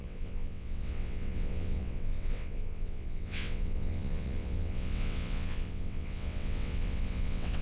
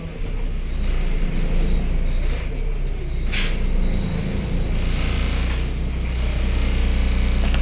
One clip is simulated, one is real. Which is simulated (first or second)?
first